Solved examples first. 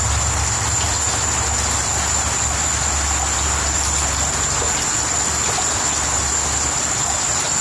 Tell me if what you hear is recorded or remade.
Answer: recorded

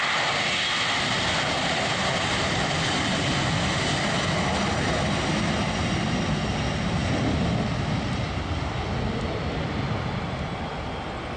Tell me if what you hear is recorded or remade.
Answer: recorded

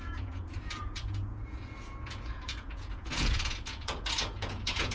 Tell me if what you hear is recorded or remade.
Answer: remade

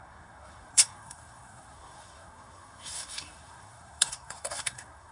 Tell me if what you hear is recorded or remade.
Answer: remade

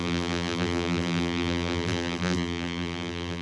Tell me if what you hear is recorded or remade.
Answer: remade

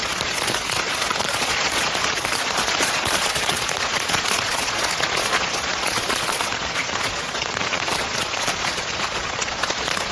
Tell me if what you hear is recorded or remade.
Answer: remade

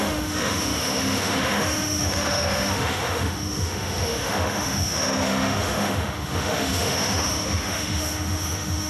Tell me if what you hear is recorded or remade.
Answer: remade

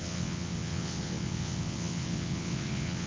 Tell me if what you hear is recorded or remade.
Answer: remade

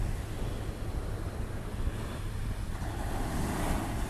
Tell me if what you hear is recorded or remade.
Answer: recorded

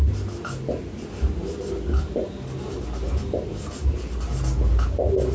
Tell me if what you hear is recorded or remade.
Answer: recorded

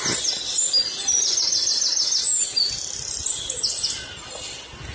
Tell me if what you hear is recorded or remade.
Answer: recorded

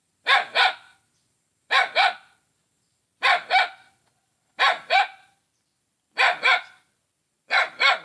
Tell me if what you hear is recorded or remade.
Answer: remade